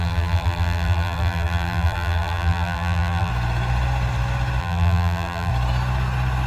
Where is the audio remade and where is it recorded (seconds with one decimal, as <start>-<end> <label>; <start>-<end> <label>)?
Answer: 0.0-3.3 remade; 3.3-4.6 recorded; 4.6-5.5 remade; 5.5-6.5 recorded